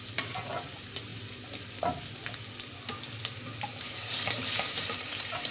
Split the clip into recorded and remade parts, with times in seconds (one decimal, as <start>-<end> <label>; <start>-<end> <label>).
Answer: 0.0-1.1 remade; 1.1-1.8 recorded; 1.8-2.2 remade; 2.2-3.6 recorded; 3.6-5.5 remade